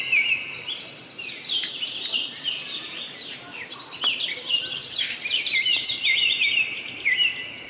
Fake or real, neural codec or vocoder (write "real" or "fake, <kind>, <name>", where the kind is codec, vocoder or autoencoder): fake, vocoder, BigVGAN v2